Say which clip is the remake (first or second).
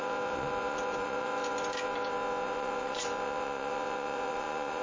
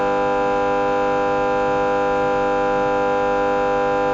first